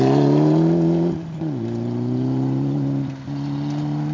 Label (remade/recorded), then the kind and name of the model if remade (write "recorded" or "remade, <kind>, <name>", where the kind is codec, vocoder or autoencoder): recorded